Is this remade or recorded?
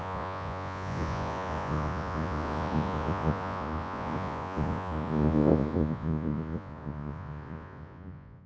remade